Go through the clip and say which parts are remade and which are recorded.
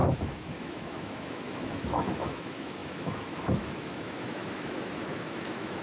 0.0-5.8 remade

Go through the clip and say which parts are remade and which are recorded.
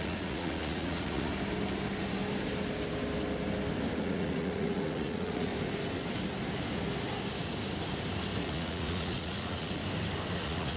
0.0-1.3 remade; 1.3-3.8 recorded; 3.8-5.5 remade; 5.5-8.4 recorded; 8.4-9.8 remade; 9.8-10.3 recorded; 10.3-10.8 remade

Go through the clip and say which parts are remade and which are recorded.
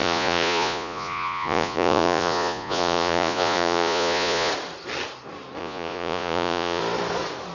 0.0-4.5 remade; 4.5-5.6 recorded; 5.6-6.8 remade; 6.8-7.5 recorded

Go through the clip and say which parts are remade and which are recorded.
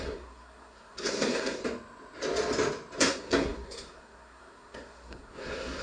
0.0-1.6 remade; 1.6-3.0 recorded; 3.0-5.8 remade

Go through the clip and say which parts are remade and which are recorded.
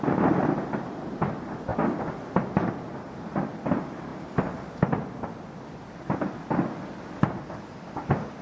0.0-8.4 recorded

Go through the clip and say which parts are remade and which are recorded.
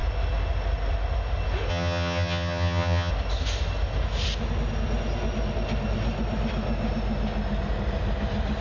0.0-1.7 recorded; 1.7-3.1 remade; 3.1-8.6 recorded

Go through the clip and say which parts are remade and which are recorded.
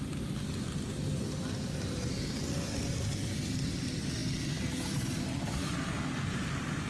0.0-6.9 recorded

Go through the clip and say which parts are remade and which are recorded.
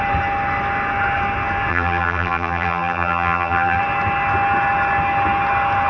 0.0-1.7 recorded; 1.7-3.8 remade; 3.8-5.9 recorded